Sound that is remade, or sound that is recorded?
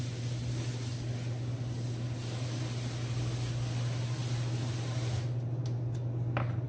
recorded